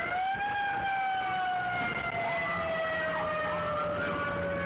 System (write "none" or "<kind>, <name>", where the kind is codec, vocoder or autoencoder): none